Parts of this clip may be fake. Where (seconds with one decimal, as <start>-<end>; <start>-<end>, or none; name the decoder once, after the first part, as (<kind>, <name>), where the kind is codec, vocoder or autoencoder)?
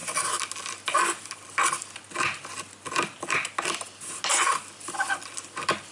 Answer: none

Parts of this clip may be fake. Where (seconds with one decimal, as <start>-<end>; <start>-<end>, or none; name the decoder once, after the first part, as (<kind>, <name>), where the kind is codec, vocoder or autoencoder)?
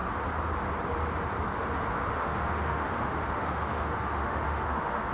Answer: 2.0-5.1 (autoencoder, DAC-VAE)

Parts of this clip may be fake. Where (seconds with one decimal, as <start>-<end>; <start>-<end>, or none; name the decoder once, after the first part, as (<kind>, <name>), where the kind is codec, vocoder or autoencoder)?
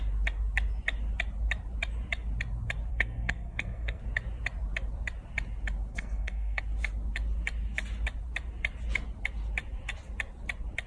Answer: 2.9-4.0 (codec, SNAC); 5.9-6.6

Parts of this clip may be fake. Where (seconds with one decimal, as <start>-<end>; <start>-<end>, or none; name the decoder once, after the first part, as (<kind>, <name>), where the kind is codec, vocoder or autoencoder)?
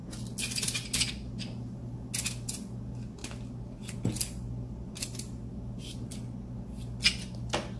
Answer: none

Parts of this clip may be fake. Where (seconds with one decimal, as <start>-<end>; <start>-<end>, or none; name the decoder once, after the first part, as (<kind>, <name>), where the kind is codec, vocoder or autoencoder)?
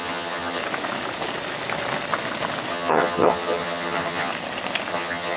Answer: 0.0-0.6 (vocoder, HiFi-GAN); 2.7-4.3; 4.9-5.4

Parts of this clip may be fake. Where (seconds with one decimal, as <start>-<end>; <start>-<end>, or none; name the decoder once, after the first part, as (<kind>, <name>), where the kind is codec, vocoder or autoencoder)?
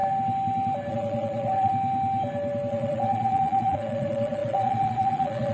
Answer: 0.9-1.7 (vocoder, Vocos); 2.7-5.5